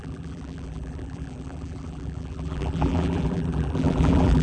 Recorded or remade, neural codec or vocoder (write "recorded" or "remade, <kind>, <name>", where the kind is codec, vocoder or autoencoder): remade, vocoder, BigVGAN v2